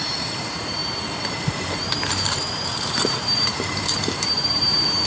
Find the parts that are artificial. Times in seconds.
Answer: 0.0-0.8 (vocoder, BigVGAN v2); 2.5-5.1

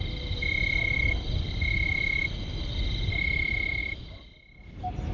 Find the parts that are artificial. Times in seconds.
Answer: none

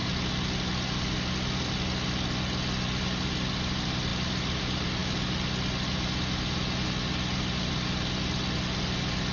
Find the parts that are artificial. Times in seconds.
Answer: none

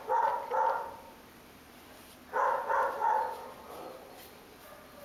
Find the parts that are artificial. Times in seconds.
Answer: none

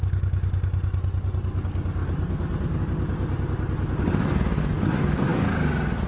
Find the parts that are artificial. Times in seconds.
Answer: 2.0-2.8 (vocoder, BigVGAN v2)

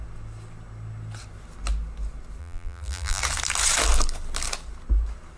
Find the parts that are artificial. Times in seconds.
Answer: 2.4-3.2 (vocoder, BigVGAN v2)

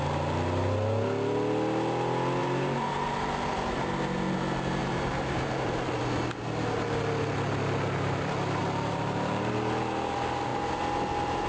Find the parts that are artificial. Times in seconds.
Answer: 2.4-2.9 (vocoder, BigVGAN v2); 4.8-6.0; 8.6-9.5